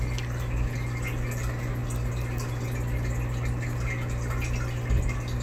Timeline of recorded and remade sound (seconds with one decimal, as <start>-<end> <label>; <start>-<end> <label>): 0.0-5.4 recorded